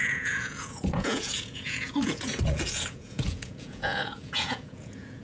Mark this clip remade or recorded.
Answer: remade